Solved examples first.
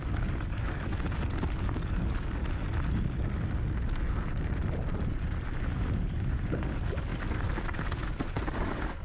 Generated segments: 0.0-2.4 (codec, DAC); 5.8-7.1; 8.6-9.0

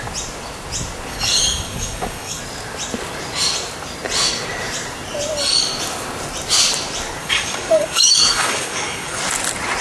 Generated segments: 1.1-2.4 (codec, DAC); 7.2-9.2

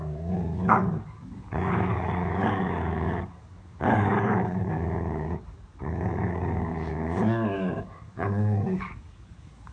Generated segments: 0.0-9.7 (codec, DAC)